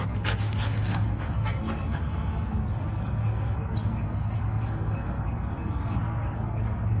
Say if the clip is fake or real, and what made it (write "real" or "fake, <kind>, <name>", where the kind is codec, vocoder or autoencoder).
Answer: fake, codec, SNAC